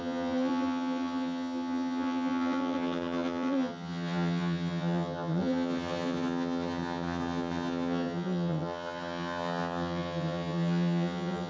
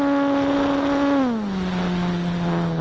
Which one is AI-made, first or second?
first